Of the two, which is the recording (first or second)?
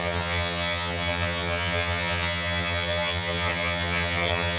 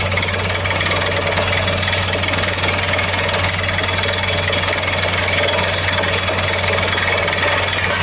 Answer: second